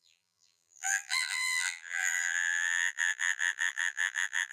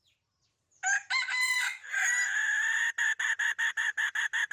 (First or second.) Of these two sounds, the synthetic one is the first